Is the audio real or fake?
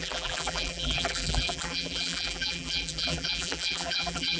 fake